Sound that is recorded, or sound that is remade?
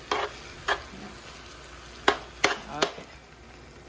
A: recorded